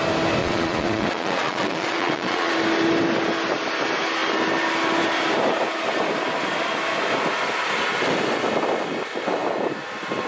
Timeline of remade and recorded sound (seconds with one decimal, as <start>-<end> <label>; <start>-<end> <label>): 0.0-0.4 recorded; 0.4-2.5 remade; 2.5-10.3 recorded